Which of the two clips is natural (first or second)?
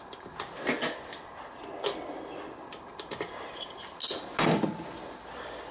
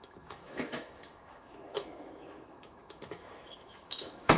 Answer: first